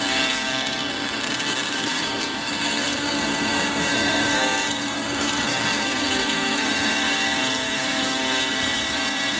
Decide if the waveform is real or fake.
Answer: fake